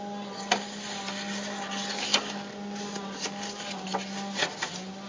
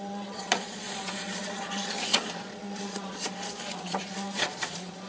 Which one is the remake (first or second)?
second